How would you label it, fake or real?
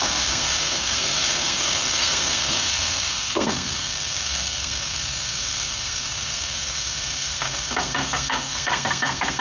fake